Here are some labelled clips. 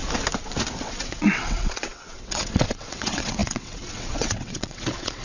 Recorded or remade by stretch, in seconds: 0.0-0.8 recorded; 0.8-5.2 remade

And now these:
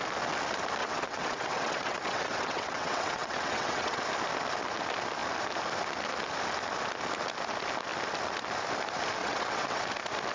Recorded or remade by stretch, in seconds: 0.0-0.8 recorded; 0.8-4.0 remade; 4.0-9.2 recorded; 9.2-9.8 remade; 9.8-10.3 recorded

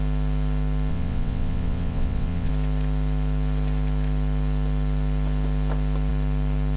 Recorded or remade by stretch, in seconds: 0.0-0.9 recorded; 0.9-2.5 remade; 2.5-6.8 recorded

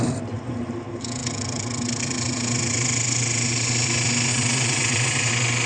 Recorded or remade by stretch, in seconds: 0.0-4.3 recorded; 4.3-5.3 remade; 5.3-5.7 recorded

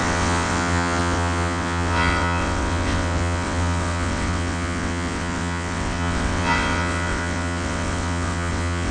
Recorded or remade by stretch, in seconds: 0.0-8.9 remade

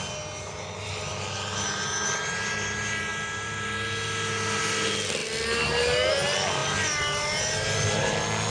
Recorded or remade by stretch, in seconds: 0.0-8.5 recorded

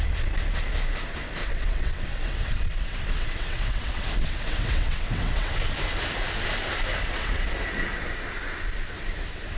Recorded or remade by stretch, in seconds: 0.0-1.4 recorded; 1.4-5.5 remade; 5.5-6.9 recorded; 6.9-7.5 remade; 7.5-9.6 recorded